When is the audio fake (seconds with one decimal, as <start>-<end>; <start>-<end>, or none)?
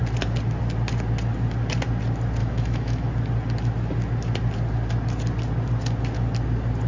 2.4-3.1